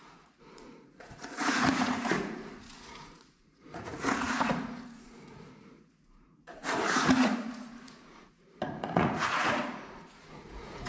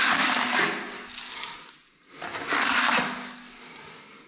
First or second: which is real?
second